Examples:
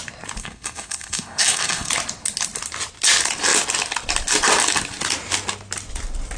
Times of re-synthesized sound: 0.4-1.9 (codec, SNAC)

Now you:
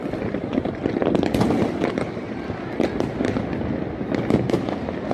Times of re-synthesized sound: none

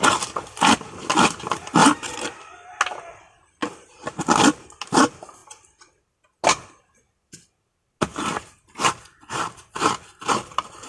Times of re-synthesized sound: 1.8-2.4 (vocoder, BigVGAN v2); 3.6-4.2